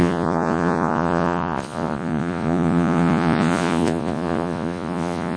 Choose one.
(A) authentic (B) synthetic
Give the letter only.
B